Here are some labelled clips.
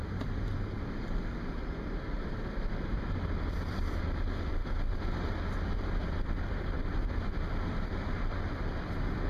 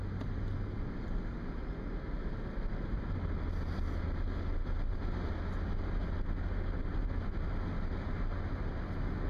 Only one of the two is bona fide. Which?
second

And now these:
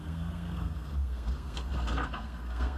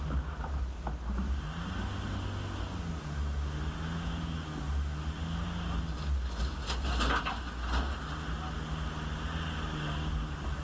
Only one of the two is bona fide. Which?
second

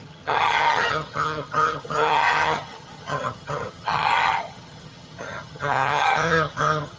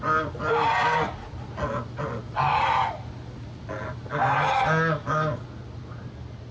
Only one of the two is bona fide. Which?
second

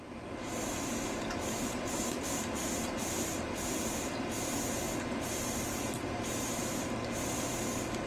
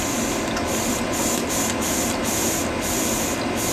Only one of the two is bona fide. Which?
second